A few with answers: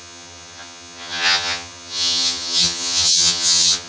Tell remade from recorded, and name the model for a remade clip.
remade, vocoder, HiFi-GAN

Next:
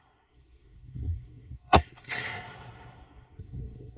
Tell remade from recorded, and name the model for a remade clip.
remade, codec, SNAC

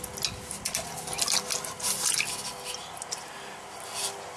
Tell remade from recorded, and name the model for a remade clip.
recorded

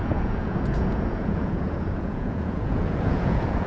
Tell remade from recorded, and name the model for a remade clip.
remade, vocoder, Vocos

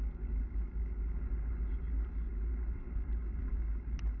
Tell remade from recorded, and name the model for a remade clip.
recorded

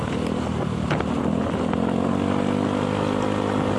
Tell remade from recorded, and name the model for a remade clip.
recorded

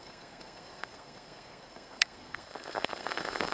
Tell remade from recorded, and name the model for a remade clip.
remade, codec, SNAC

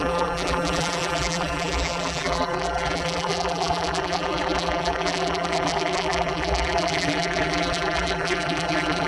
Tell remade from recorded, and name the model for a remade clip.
remade, vocoder, BigVGAN v2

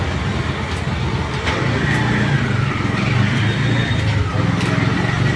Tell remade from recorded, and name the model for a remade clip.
recorded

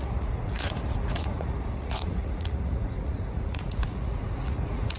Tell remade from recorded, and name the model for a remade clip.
remade, vocoder, Vocos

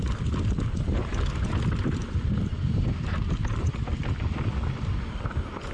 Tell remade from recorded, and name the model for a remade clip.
remade, vocoder, BigVGAN v2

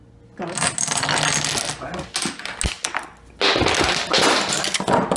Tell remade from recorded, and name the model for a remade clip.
recorded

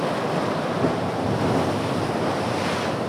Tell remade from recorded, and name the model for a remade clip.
remade, vocoder, BigVGAN v2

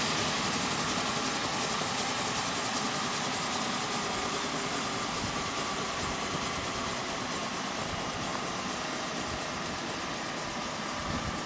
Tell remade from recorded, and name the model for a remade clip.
recorded